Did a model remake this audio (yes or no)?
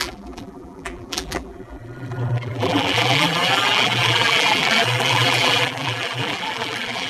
yes